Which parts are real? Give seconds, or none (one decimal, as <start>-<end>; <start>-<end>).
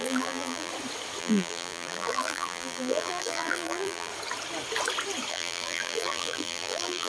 0.7-1.2; 4.1-5.3